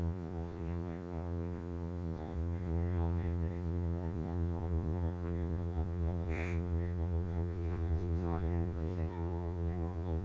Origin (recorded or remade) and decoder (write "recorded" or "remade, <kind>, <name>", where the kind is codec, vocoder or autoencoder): remade, vocoder, Vocos